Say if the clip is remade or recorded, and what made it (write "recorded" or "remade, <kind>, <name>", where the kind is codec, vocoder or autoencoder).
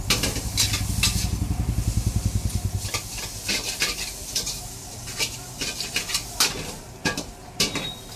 recorded